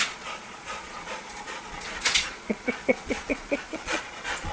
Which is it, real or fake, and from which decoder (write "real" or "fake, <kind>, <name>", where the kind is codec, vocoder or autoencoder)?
fake, vocoder, Vocos